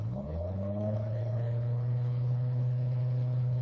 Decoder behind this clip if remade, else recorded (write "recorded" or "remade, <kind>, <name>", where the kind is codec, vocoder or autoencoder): remade, codec, HILCodec